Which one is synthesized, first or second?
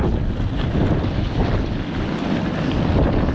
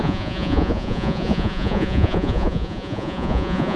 second